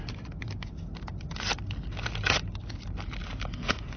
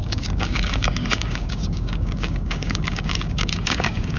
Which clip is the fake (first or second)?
second